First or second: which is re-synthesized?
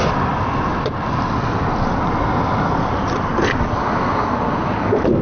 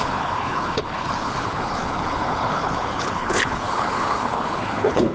second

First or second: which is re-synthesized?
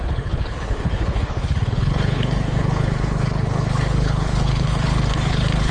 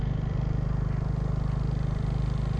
first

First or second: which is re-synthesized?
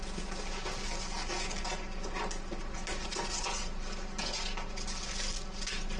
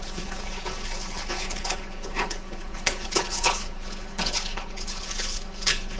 second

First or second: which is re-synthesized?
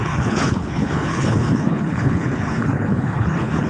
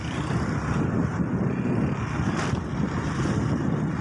first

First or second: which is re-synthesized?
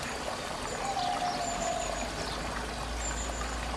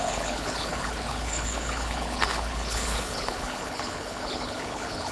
second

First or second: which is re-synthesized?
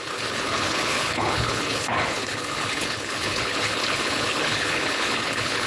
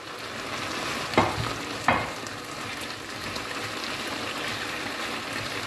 first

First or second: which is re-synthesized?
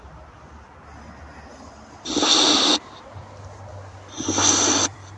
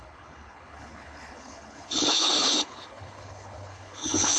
second